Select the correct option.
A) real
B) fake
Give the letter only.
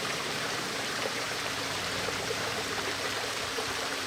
B